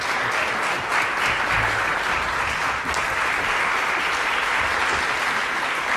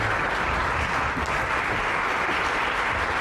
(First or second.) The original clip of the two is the first